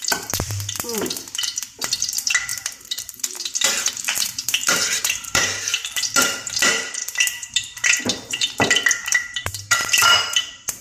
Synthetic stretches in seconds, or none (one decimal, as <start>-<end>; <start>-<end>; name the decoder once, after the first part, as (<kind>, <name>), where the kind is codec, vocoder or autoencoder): 0.0-10.8 (vocoder, BigVGAN v2)